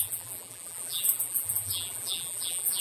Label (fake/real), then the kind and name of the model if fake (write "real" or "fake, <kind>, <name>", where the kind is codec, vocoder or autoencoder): fake, vocoder, BigVGAN v2